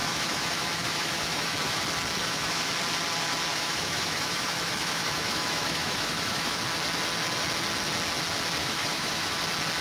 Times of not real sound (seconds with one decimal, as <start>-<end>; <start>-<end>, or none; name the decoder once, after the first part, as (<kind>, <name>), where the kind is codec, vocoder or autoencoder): 0.0-1.8 (autoencoder, DAC-VAE); 2.2-2.7; 3.5-6.6; 8.6-9.4